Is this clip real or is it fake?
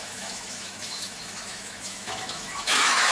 fake